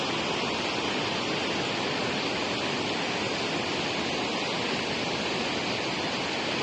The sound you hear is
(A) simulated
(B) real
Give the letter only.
B